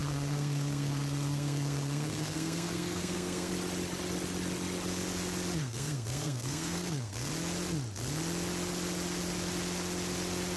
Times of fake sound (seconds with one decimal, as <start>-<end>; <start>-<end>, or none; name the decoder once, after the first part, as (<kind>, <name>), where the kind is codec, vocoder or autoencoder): 0.0-3.5 (codec, SNAC); 5.6-7.3